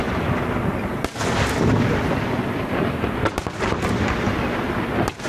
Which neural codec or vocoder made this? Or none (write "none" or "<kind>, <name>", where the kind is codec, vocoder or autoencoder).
none